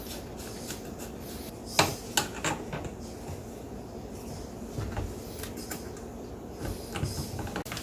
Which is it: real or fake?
real